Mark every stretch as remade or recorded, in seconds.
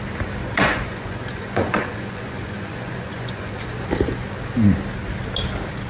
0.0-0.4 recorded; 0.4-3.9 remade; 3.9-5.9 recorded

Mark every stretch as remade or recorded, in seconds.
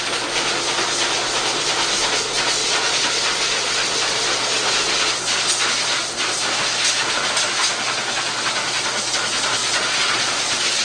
0.0-2.6 recorded; 2.6-3.1 remade; 3.1-9.6 recorded; 9.6-10.8 remade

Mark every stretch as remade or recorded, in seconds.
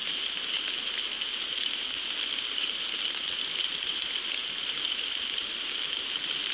0.0-6.5 recorded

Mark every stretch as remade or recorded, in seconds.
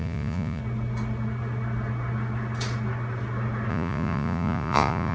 0.0-0.6 remade; 0.6-3.7 recorded; 3.7-5.1 remade